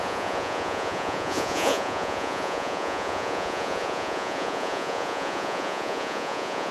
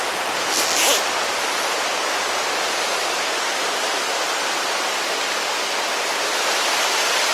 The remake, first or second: first